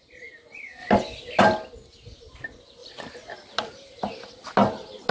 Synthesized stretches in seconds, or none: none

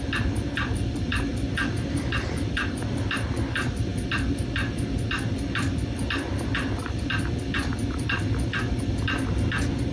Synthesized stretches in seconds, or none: 1.3-3.0 (vocoder, BigVGAN v2)